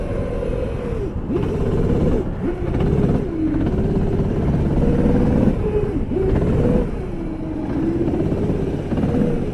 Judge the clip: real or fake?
real